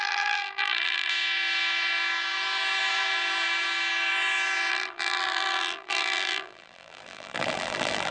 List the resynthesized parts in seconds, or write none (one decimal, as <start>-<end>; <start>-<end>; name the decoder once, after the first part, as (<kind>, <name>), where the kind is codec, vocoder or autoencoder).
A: 0.0-1.1 (vocoder, BigVGAN v2); 4.7-8.1